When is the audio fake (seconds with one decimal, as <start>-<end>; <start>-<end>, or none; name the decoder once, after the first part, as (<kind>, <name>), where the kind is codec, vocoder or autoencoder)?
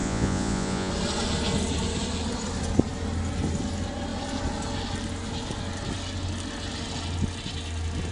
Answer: 0.0-0.9 (vocoder, Vocos)